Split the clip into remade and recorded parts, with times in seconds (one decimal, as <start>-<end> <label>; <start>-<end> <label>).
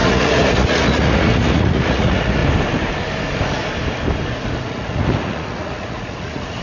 0.0-2.4 remade; 2.4-4.6 recorded; 4.6-6.6 remade